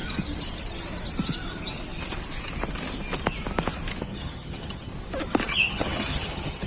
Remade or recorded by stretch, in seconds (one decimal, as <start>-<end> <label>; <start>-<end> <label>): 0.0-4.0 recorded; 4.0-4.9 remade; 4.9-5.5 recorded; 5.5-6.7 remade